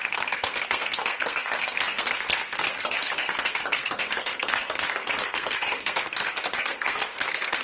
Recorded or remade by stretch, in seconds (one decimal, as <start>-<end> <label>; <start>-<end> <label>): 0.0-7.6 remade

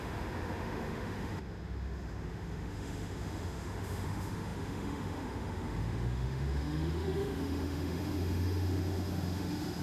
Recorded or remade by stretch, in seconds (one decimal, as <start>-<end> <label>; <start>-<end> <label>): 0.0-9.8 remade

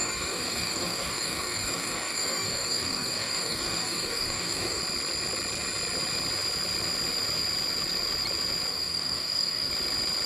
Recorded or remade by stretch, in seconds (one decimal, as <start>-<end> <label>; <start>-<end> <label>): 0.0-4.8 remade; 4.8-8.7 recorded; 8.7-9.7 remade; 9.7-10.3 recorded

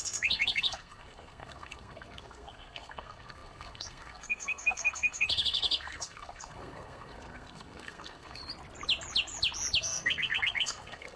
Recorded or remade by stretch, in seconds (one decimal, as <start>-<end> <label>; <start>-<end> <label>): 0.0-8.4 remade; 8.4-9.8 recorded; 9.8-11.2 remade

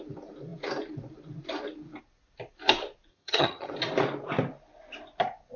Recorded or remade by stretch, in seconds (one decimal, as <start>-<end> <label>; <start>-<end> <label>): 0.0-3.1 recorded; 3.1-3.7 remade; 3.7-5.6 recorded

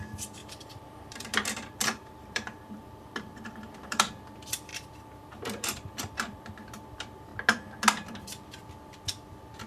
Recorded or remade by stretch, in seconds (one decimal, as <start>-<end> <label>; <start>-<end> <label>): 0.0-7.3 remade; 7.3-9.7 recorded